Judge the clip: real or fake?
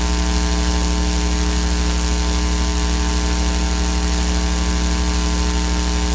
real